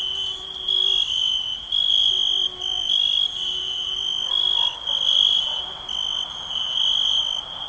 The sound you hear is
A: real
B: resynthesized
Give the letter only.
A